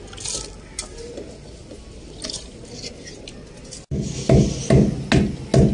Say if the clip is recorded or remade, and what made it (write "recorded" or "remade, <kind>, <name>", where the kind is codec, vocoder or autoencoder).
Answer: recorded